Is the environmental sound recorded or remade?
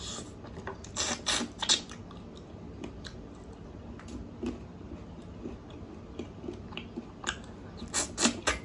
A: recorded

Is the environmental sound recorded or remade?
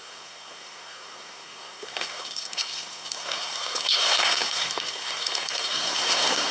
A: remade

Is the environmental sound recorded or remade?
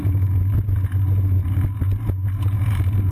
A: recorded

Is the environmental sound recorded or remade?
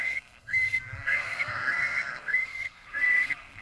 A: remade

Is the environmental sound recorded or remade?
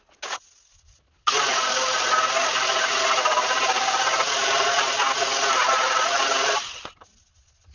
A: recorded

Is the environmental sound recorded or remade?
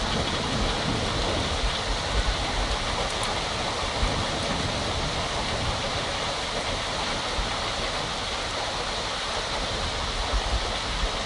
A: recorded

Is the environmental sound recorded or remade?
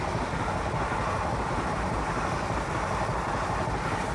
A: recorded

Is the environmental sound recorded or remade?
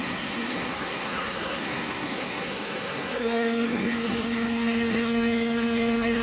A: remade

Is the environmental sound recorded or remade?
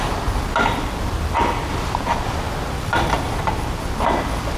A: recorded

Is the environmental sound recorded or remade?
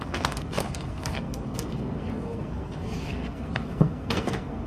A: remade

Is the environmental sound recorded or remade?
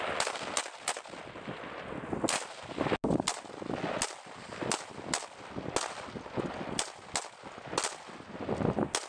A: recorded